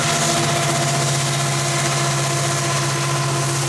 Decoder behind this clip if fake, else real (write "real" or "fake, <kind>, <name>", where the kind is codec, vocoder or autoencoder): real